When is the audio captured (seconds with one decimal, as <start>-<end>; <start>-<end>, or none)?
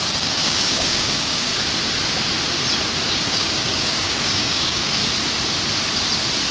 1.5-3.1; 5.0-6.5